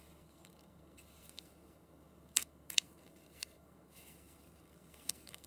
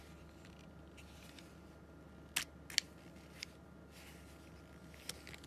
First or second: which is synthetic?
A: first